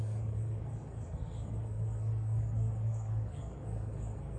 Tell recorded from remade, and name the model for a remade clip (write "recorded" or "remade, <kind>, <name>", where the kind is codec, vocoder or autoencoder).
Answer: remade, codec, SNAC